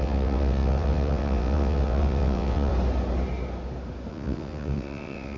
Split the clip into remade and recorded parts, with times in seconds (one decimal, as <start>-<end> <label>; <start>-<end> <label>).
0.0-2.7 remade; 2.7-4.1 recorded; 4.1-5.4 remade